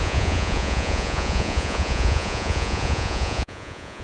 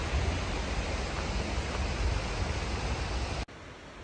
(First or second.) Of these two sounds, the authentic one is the second